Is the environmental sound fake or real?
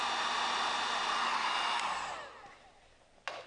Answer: real